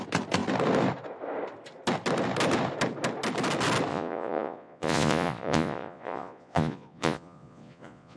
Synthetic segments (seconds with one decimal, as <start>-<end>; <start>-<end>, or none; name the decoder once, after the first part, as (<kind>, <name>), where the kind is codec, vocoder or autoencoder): 3.9-8.2 (vocoder, Vocos)